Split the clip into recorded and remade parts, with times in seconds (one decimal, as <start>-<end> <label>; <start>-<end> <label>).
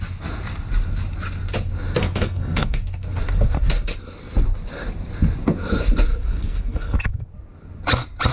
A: 0.0-2.0 recorded; 2.0-2.8 remade; 2.8-6.1 recorded; 6.1-7.3 remade; 7.3-8.3 recorded